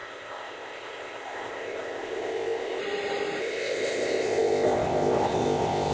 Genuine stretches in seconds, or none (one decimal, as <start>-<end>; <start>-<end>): 2.8-3.4